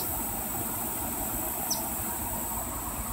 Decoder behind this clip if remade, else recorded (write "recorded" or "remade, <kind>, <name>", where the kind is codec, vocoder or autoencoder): recorded